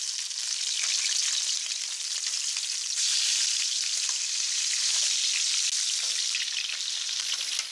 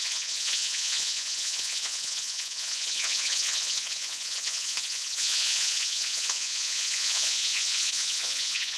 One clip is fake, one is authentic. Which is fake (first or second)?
second